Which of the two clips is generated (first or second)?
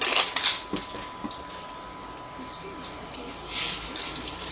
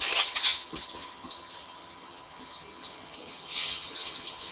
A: second